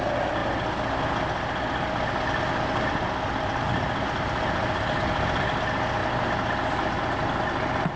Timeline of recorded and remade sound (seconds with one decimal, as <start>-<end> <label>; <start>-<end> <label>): 0.0-8.0 recorded